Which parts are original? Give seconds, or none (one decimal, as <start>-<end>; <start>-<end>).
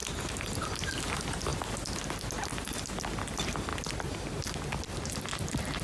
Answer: 0.0-5.8